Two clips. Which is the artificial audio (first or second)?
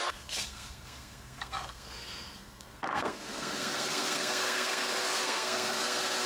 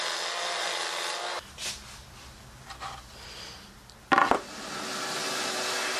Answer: first